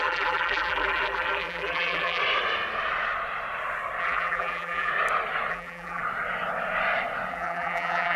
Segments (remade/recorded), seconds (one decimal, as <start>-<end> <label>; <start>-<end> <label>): 0.0-2.2 remade; 2.2-4.0 recorded; 4.0-4.9 remade; 4.9-5.5 recorded; 5.5-6.0 remade; 6.0-7.3 recorded; 7.3-8.2 remade